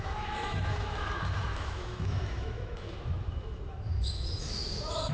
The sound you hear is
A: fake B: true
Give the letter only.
A